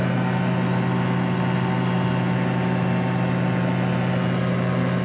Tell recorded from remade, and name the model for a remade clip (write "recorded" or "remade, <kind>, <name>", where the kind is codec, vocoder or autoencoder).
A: recorded